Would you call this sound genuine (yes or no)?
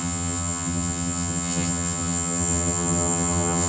no